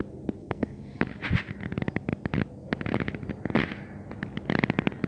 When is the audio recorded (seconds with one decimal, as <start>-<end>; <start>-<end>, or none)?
0.0-0.4; 1.0-5.1